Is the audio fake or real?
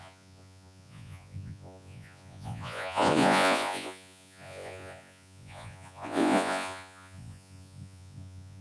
fake